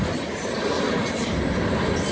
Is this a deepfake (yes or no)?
no